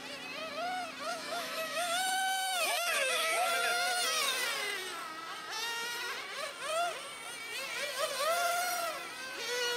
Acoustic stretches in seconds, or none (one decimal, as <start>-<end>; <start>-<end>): 0.0-1.1; 3.5-9.8